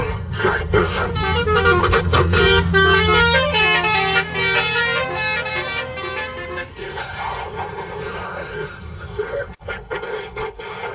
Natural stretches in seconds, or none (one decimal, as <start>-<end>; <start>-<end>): 1.1-1.8; 2.4-6.7

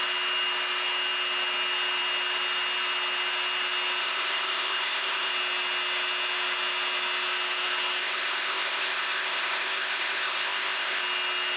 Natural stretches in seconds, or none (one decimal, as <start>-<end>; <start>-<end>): 0.0-4.0; 5.3-8.0; 11.0-11.6

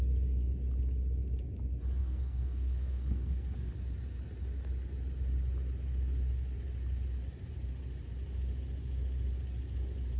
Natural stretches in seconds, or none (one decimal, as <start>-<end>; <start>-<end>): 0.0-2.0; 3.7-10.2

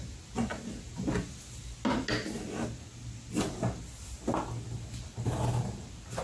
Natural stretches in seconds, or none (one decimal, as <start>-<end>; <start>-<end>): 0.0-6.2

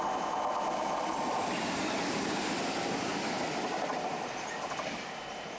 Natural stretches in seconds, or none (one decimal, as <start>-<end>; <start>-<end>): 0.0-5.6

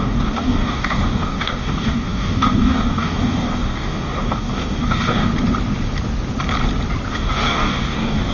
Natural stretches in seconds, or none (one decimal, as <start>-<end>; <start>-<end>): 5.3-7.1

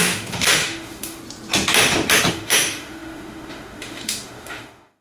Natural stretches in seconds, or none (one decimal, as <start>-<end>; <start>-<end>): 1.2-2.3